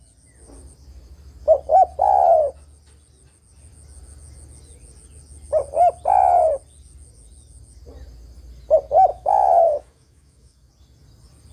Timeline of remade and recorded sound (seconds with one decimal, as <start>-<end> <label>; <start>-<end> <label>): 0.0-9.1 recorded; 9.1-10.7 remade; 10.7-11.5 recorded